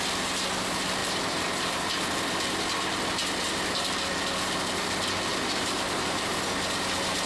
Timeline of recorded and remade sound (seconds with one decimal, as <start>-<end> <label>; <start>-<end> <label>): 0.0-1.0 recorded; 1.0-1.9 remade; 1.9-5.3 recorded; 5.3-6.4 remade; 6.4-7.3 recorded